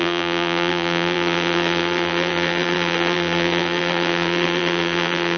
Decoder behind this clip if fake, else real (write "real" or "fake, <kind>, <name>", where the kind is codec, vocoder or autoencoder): fake, vocoder, BigVGAN v2